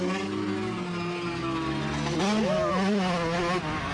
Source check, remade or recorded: recorded